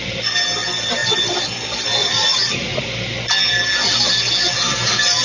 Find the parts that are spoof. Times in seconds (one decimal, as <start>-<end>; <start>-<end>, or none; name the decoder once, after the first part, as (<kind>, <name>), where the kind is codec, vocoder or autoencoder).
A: 2.0-2.9 (vocoder, Vocos)